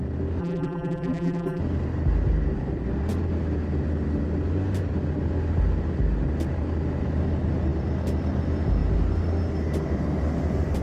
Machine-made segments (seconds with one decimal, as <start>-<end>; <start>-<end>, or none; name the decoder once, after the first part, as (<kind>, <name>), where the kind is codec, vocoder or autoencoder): 0.4-1.6 (vocoder, BigVGAN v2)